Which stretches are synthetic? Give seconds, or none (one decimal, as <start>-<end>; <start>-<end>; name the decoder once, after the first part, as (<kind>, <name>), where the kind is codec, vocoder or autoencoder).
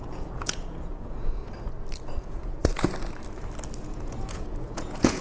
0.0-1.4 (vocoder, Vocos); 2.2-2.6; 3.8-5.2